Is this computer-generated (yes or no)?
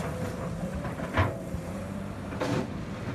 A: yes